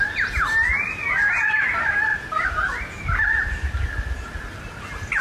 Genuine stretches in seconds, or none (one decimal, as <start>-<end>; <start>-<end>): 0.0-5.2